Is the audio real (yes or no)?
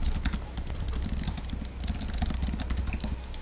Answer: yes